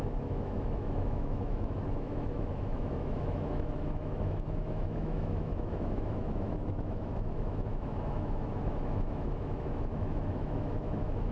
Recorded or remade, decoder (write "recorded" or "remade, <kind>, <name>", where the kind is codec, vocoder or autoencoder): remade, autoencoder, DAC-VAE